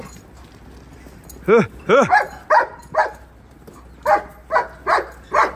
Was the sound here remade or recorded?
recorded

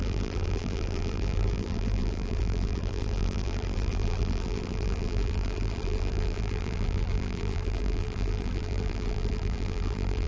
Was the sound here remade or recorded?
remade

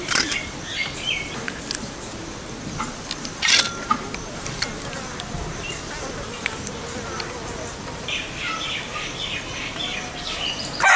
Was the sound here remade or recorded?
recorded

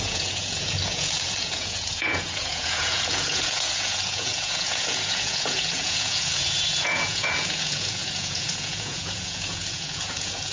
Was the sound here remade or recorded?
remade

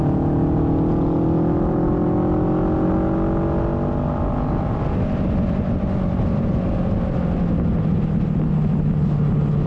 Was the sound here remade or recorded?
recorded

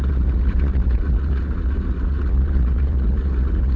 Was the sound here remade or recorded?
remade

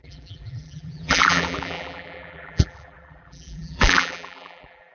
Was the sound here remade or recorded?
remade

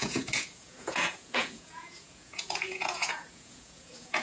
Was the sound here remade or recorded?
remade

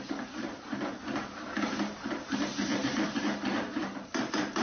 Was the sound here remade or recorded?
remade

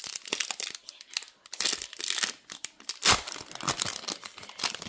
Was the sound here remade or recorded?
recorded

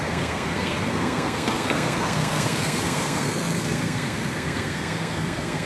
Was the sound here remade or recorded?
remade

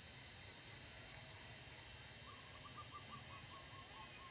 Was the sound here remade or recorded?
recorded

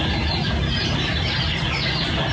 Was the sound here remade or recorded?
recorded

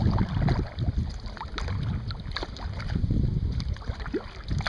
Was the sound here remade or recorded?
recorded